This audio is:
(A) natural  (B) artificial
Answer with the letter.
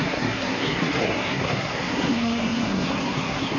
B